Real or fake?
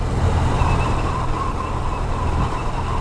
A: real